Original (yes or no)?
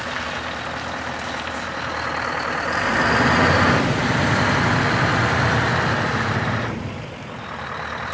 yes